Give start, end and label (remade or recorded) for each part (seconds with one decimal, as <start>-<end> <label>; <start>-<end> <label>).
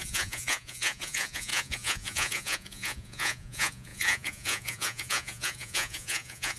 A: 0.0-6.6 remade